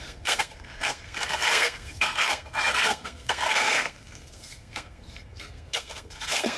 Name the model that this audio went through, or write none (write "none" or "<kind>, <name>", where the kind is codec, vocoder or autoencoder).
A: codec, SNAC